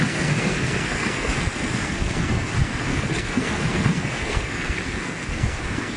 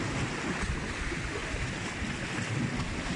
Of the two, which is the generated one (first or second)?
first